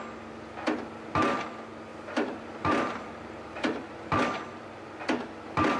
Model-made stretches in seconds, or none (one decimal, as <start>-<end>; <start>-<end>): 1.9-4.2